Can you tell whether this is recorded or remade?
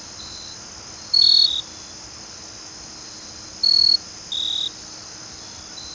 recorded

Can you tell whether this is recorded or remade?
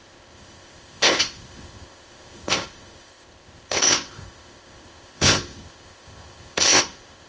remade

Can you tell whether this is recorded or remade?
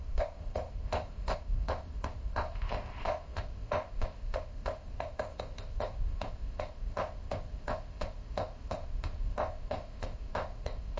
remade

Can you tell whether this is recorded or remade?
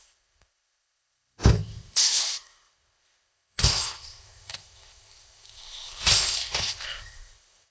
remade